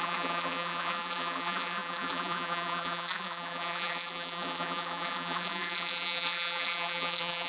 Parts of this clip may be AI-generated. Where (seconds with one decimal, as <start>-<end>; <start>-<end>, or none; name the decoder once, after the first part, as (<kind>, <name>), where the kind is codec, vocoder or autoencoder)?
0.0-7.5 (vocoder, BigVGAN v2)